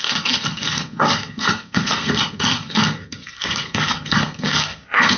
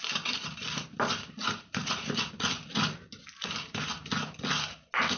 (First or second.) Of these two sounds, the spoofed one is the first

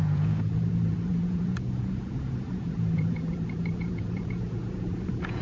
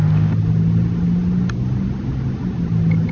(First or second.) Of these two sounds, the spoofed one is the first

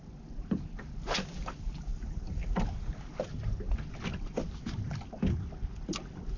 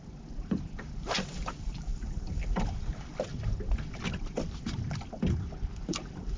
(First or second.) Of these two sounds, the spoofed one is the second